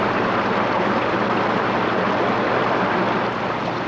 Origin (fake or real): real